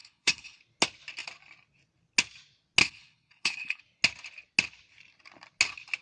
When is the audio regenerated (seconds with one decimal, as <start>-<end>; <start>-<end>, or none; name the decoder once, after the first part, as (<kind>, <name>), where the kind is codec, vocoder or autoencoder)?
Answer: 0.0-0.6 (codec, HILCodec); 2.8-3.8